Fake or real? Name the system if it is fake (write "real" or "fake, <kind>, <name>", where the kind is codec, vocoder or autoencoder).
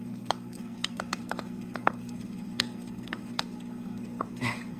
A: fake, codec, SNAC